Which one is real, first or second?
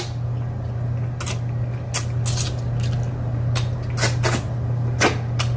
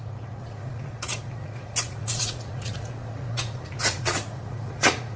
first